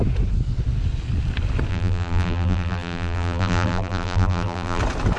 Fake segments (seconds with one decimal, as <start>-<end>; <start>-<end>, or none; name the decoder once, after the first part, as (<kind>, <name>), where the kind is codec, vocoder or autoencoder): 1.7-4.8 (vocoder, BigVGAN v2)